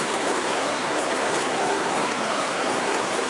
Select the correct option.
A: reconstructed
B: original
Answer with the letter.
A